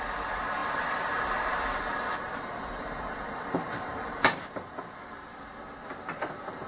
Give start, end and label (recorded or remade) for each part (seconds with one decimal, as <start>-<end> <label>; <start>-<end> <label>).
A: 0.0-0.6 recorded; 0.6-4.4 remade; 4.4-6.7 recorded